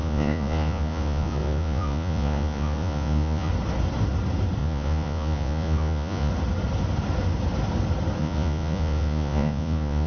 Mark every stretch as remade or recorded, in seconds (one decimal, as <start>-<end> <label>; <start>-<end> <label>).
0.0-3.5 remade; 3.5-4.6 recorded; 4.6-6.3 remade; 6.3-8.2 recorded; 8.2-10.1 remade